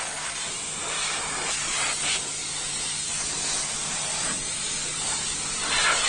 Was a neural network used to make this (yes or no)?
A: no